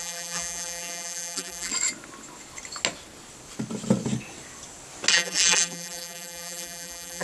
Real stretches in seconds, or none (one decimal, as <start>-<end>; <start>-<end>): 1.7-5.1